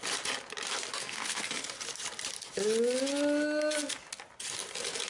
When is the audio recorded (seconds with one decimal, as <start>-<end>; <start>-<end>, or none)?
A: 0.0-1.0; 1.6-5.1